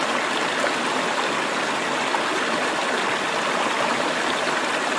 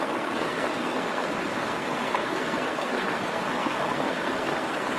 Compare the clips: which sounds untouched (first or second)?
first